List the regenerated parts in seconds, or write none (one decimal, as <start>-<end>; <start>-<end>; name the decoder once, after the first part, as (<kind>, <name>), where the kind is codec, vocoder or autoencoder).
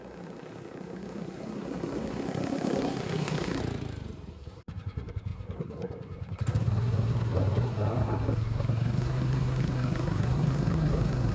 0.0-3.6 (codec, SNAC); 4.3-11.3